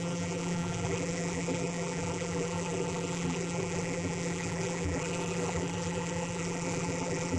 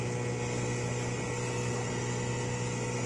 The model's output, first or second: first